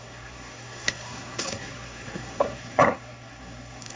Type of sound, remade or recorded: remade